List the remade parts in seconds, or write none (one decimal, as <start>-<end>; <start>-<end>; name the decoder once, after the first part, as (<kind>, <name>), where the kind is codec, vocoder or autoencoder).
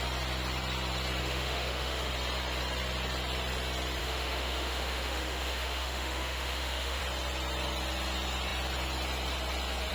1.2-2.1 (autoencoder, DAC-VAE); 4.0-7.0